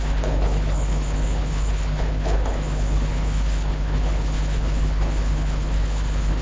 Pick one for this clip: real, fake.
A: fake